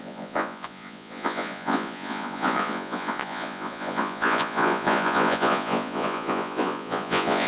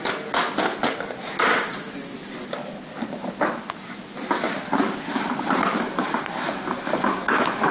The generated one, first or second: first